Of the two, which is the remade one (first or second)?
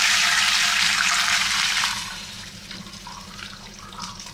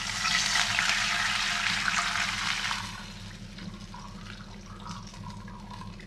first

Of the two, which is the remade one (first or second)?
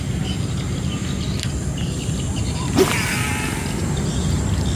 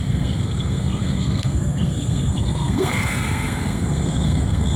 second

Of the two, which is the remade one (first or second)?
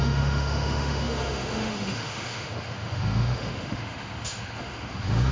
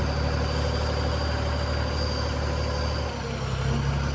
first